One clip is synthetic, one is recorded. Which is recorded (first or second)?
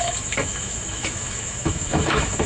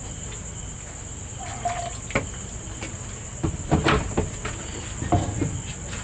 second